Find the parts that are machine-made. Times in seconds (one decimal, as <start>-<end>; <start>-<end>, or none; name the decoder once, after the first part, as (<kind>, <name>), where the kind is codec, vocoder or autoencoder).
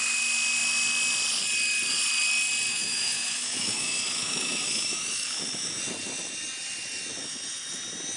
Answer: 2.7-5.8 (autoencoder, DAC-VAE)